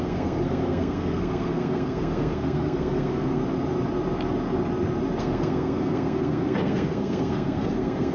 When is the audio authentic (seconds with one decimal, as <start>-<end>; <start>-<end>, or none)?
3.4-5.2